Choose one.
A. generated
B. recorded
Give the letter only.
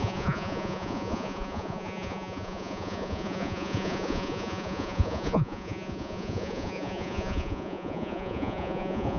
A